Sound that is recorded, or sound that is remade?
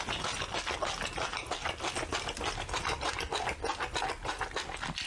recorded